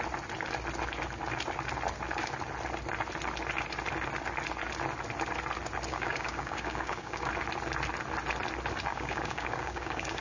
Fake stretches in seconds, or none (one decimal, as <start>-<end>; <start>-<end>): 5.9-7.3; 8.9-10.2